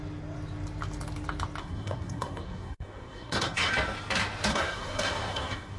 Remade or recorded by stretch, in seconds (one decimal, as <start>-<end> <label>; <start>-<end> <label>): 0.0-1.6 recorded; 1.6-3.7 remade; 3.7-4.5 recorded; 4.5-5.8 remade